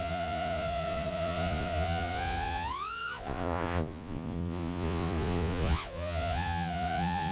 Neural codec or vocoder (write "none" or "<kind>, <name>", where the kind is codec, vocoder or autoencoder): vocoder, Vocos